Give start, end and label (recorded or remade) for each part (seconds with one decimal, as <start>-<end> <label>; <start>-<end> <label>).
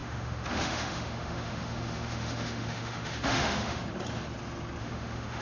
0.0-3.8 remade; 3.8-4.8 recorded; 4.8-5.4 remade